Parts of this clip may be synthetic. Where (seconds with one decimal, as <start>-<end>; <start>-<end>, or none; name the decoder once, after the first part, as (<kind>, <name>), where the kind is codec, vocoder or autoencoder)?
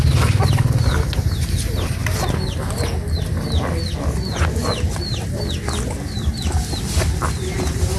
none